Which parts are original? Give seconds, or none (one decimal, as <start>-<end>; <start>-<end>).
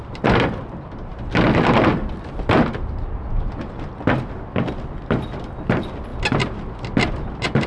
0.0-7.7